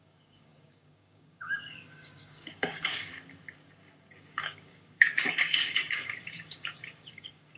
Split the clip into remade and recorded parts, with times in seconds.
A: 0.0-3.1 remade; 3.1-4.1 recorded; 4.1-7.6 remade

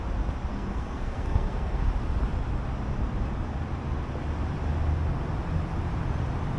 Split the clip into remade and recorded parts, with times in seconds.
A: 0.0-0.5 recorded; 0.5-1.9 remade; 1.9-6.6 recorded